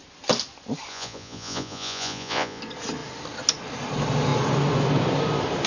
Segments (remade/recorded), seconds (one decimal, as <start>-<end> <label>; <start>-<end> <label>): 0.0-0.9 recorded; 0.9-2.6 remade; 2.6-5.7 recorded